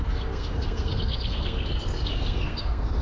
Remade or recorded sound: remade